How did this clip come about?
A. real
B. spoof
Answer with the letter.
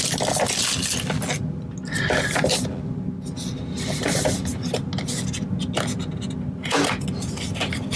A